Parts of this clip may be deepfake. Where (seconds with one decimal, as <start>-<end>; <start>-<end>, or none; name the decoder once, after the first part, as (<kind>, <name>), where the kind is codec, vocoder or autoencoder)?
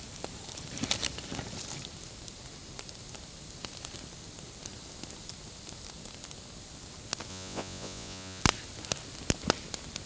7.3-8.4 (vocoder, Vocos)